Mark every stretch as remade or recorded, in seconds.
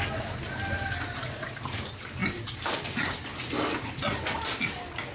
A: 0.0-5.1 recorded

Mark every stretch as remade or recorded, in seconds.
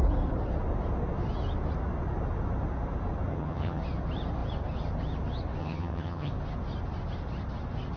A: 0.0-3.3 recorded; 3.3-3.8 remade; 3.8-5.6 recorded; 5.6-6.3 remade; 6.3-8.0 recorded